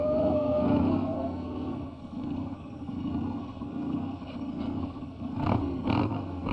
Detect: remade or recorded remade